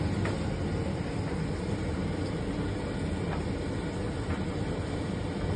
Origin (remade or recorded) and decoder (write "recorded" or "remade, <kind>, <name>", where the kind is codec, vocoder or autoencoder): recorded